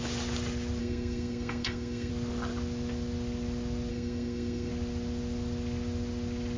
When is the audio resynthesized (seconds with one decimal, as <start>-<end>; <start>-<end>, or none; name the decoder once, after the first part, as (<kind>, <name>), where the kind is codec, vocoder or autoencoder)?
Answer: 0.8-2.1 (codec, SNAC); 3.9-4.7